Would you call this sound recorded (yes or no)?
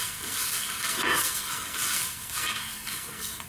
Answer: no